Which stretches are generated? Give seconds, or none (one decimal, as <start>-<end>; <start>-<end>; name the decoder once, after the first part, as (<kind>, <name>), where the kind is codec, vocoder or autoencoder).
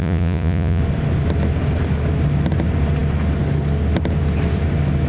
0.0-0.8 (vocoder, Vocos)